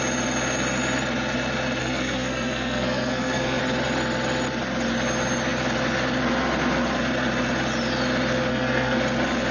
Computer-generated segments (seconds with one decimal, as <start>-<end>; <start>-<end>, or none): 1.8-3.6; 8.5-9.0